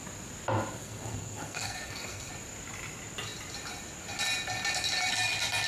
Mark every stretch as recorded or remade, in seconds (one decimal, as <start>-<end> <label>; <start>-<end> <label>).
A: 0.0-0.8 recorded; 0.8-2.3 remade; 2.3-5.7 recorded